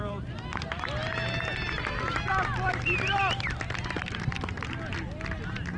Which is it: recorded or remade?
recorded